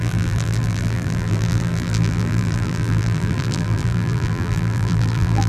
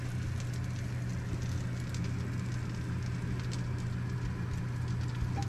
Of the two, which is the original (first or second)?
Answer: second